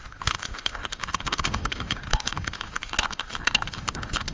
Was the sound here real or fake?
fake